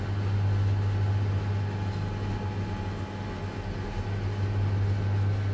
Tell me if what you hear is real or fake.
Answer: real